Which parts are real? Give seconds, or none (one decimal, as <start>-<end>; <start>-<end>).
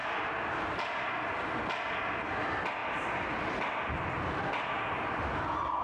0.0-5.8